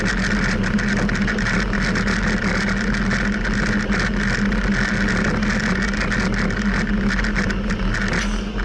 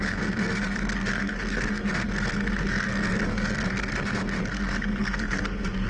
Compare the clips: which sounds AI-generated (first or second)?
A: second